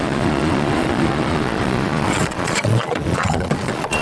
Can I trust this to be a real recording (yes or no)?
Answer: no